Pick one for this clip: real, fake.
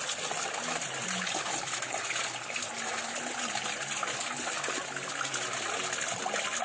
real